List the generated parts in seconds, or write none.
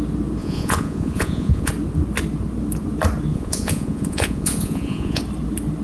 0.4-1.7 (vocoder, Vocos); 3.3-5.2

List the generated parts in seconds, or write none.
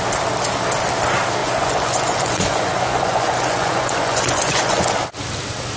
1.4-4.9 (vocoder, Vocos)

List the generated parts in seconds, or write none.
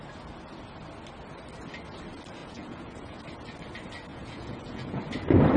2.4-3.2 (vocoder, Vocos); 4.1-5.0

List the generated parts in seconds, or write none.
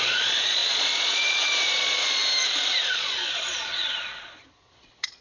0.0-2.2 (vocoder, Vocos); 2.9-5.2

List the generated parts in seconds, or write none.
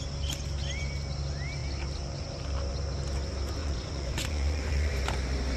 3.6-4.9 (vocoder, Vocos)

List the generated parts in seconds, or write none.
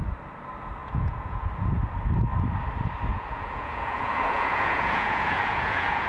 0.8-1.5 (vocoder, Vocos); 3.1-6.1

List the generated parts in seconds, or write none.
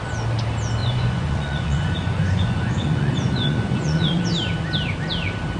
0.8-4.2 (vocoder, Vocos)